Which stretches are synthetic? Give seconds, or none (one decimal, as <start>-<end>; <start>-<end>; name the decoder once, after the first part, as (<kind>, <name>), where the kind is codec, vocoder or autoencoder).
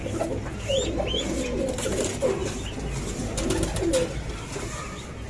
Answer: none